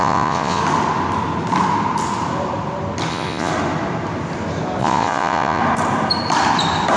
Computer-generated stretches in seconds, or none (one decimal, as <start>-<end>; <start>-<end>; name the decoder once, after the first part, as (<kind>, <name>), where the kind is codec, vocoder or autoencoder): 0.0-0.6 (vocoder, Vocos); 3.1-3.5; 4.8-5.6